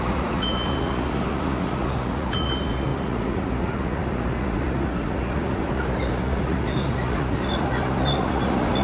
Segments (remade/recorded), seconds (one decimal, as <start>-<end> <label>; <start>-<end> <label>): 0.0-8.8 remade